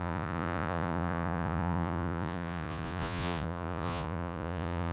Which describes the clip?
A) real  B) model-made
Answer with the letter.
B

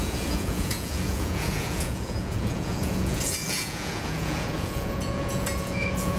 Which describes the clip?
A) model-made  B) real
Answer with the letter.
A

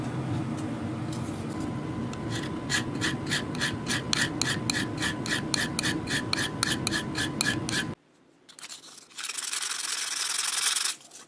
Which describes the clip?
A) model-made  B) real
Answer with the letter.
B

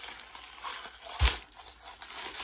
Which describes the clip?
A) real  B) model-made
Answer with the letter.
A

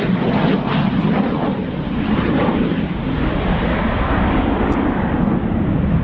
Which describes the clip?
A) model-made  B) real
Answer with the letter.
B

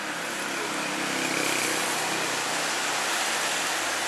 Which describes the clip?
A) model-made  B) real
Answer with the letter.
B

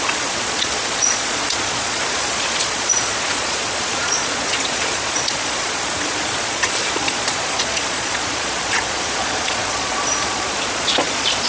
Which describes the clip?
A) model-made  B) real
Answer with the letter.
A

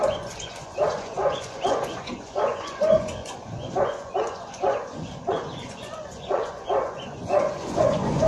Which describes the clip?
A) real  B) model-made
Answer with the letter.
B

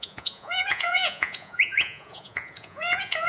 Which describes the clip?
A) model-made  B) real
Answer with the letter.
A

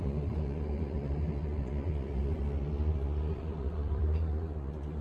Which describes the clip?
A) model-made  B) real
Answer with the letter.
A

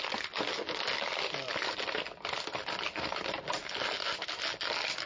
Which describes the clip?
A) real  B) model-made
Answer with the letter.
A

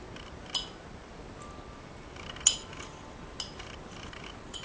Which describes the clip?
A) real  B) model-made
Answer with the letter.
A